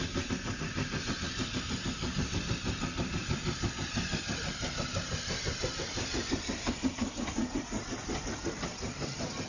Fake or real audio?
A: real